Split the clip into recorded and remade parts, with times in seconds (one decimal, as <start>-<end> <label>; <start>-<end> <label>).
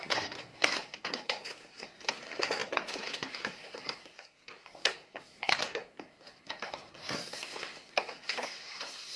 0.0-9.2 remade